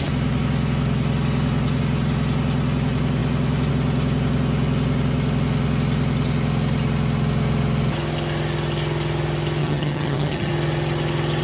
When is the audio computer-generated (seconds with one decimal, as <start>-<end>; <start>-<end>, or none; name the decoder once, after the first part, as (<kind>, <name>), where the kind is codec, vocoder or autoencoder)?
9.6-10.5 (vocoder, HiFi-GAN)